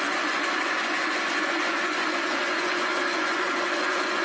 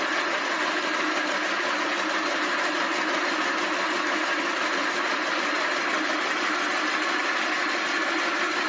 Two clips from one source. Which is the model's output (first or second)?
first